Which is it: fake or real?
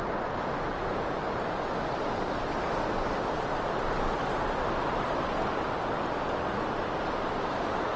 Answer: real